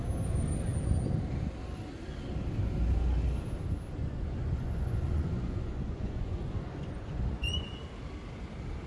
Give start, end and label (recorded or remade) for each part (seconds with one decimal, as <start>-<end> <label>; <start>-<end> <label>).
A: 0.0-4.0 recorded; 4.0-7.8 remade; 7.8-8.9 recorded